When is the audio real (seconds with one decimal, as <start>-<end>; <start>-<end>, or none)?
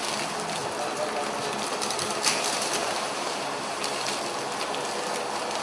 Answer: 0.0-2.8; 4.1-5.6